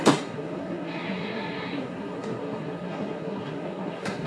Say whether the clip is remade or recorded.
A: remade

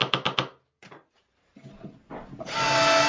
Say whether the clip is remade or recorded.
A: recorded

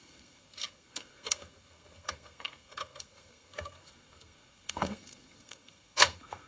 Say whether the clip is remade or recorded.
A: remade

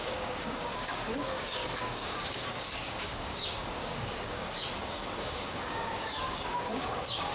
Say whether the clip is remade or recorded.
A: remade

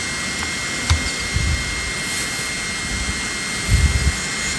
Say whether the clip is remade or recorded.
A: recorded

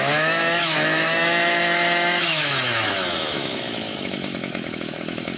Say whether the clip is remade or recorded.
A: remade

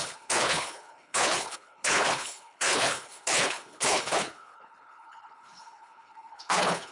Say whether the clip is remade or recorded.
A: remade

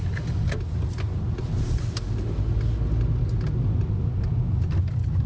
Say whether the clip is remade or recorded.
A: recorded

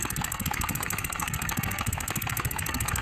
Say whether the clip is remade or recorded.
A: remade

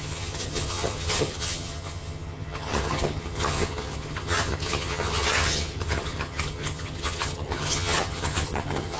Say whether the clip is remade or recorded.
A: remade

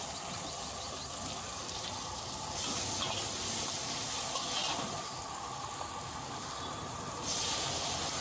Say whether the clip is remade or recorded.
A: recorded